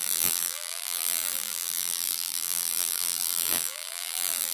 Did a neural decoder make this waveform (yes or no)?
yes